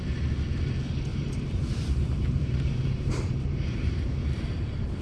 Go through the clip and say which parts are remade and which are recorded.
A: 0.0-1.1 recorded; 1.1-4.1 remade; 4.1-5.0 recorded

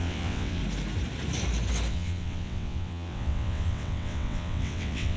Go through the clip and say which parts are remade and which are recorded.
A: 0.0-0.6 remade; 0.6-1.9 recorded; 1.9-5.2 remade

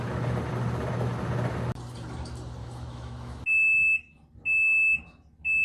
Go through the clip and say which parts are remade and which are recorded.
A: 0.0-2.6 recorded; 2.6-3.4 remade; 3.4-5.6 recorded

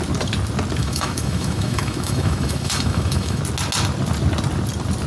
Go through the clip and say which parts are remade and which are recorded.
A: 0.0-0.8 recorded; 0.8-3.4 remade; 3.4-5.1 recorded